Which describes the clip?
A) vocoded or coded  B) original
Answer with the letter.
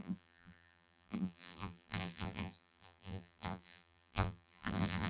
A